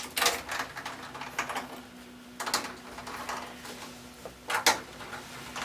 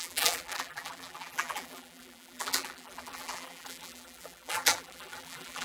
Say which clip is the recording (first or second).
first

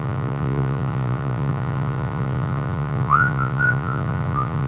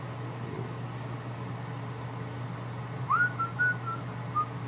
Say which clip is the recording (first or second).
second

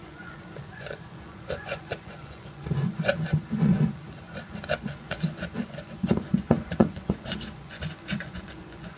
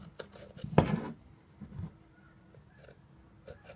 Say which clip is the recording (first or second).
second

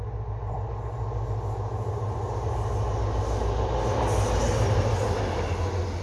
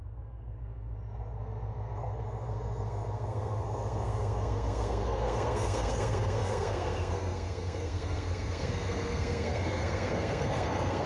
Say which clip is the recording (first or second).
first